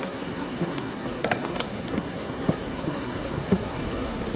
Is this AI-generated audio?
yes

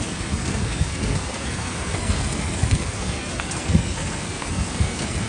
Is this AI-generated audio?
yes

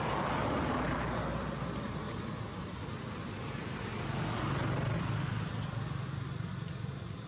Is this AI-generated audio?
no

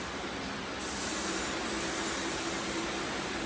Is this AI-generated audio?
no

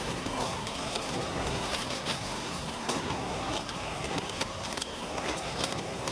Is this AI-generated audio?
yes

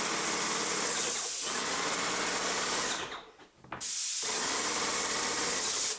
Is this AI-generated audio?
no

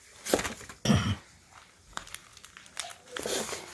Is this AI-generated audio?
no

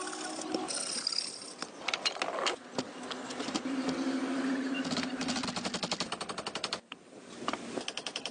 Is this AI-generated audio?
no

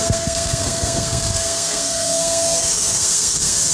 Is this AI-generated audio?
yes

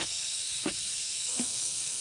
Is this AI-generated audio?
yes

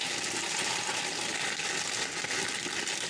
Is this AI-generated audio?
no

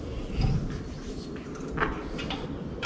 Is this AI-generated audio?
no